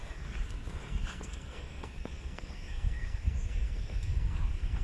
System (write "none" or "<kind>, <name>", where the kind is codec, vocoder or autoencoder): codec, SNAC